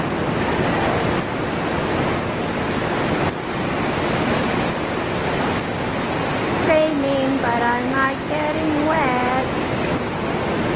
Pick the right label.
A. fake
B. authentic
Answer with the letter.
B